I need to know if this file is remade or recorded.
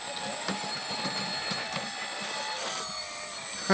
recorded